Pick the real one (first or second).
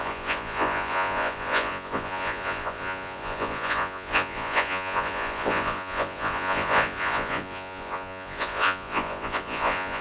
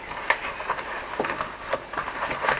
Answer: second